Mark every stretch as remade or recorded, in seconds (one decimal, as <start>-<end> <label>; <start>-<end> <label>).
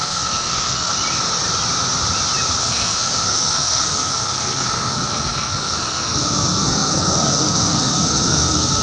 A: 0.0-0.9 remade; 0.9-2.6 recorded; 2.6-8.8 remade